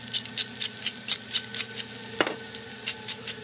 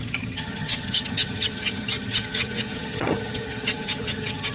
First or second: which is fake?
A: second